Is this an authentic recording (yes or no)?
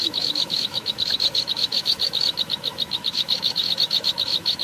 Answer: no